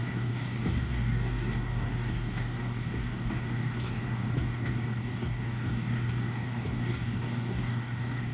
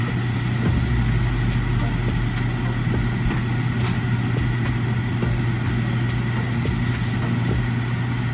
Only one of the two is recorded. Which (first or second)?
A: second